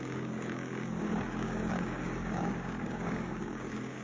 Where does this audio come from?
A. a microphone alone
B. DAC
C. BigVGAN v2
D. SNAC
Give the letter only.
B